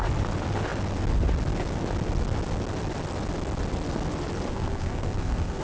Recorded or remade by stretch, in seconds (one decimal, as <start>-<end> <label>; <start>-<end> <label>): 0.0-4.5 recorded; 4.5-5.6 remade

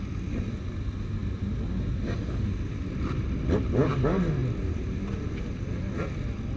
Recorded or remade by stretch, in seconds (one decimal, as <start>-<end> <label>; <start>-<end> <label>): 0.0-6.6 recorded